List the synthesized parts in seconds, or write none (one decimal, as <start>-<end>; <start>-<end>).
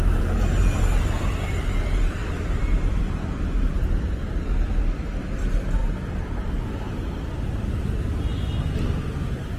2.2-3.0; 5.8-6.7; 8.3-8.8